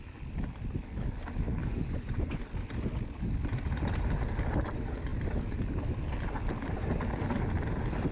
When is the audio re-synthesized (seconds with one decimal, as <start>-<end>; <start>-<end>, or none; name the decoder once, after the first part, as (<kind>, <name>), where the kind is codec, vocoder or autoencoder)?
1.6-2.4 (vocoder, Vocos)